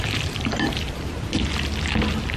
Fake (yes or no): no